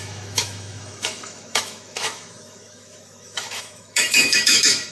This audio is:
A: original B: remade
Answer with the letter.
B